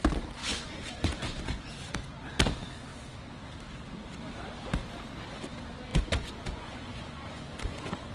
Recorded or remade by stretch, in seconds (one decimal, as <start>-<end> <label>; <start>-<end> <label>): 0.0-0.4 recorded; 0.4-1.7 remade; 1.7-5.9 recorded; 5.9-8.1 remade